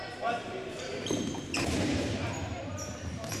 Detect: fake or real fake